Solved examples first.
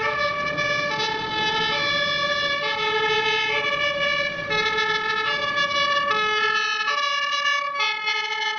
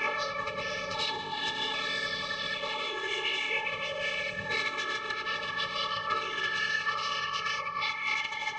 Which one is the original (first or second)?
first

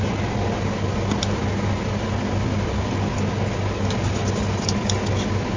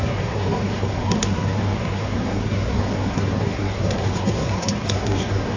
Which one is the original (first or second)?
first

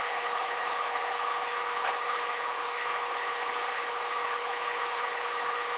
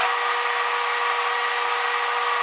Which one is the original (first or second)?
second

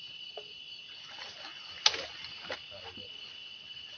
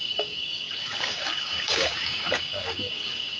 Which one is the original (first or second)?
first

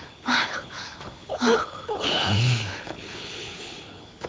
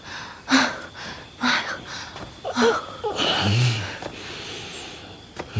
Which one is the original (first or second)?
second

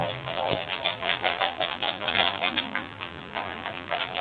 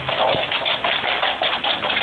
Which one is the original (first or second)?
second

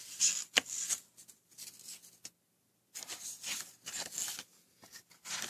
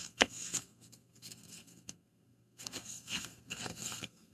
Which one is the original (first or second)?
first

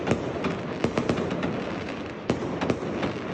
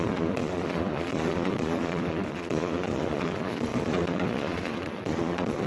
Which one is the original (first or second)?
first